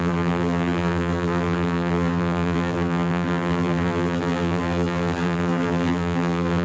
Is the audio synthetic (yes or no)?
yes